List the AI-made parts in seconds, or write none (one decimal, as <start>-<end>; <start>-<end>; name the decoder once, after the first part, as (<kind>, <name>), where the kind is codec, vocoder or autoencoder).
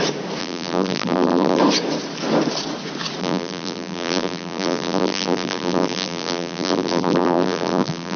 0.4-1.6 (vocoder, BigVGAN v2); 3.2-8.2